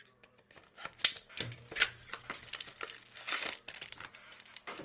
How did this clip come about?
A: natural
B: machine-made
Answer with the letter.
A